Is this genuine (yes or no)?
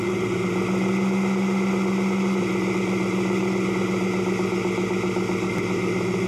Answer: yes